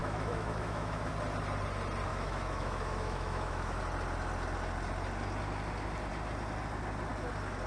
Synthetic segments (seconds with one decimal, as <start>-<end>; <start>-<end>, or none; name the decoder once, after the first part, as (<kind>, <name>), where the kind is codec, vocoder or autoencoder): 0.0-1.1 (autoencoder, DAC-VAE); 2.1-3.8